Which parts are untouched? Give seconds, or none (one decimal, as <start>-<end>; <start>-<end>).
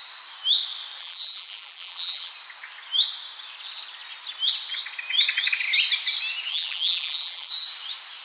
0.0-1.0; 2.3-6.5; 7.5-8.2